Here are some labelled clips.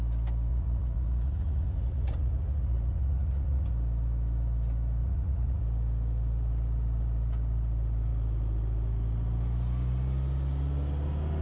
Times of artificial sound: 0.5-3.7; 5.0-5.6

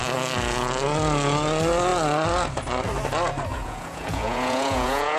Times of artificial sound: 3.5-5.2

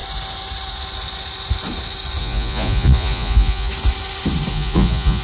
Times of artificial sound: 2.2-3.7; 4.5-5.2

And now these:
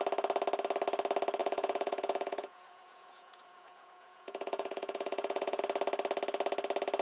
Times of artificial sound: 1.4-5.6

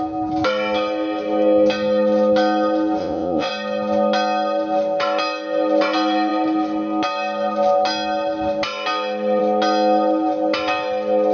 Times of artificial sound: 3.0-3.5

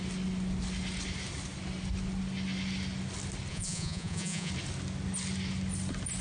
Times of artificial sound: 3.5-4.5